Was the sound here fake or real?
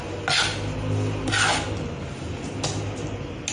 real